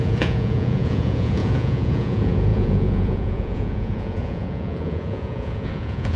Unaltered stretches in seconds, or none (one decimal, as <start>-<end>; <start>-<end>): none